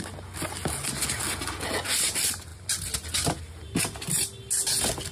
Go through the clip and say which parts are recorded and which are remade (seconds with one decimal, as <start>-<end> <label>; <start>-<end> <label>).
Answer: 0.0-5.1 recorded